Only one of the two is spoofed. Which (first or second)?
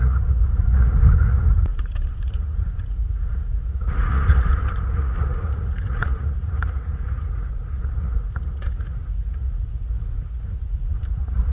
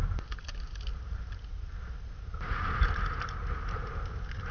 first